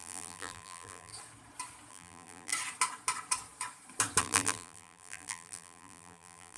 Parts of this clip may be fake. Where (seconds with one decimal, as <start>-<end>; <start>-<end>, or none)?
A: 0.0-1.1; 1.9-2.5; 4.2-6.6